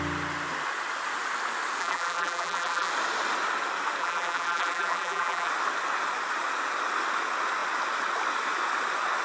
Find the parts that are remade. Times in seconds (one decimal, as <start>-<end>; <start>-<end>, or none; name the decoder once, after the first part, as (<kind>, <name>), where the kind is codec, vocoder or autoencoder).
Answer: 1.8-2.9 (vocoder, BigVGAN v2); 4.0-5.5